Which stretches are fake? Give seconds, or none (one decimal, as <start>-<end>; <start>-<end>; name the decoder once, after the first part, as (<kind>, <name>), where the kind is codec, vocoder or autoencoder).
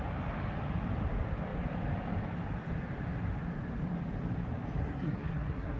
4.8-5.8 (codec, SNAC)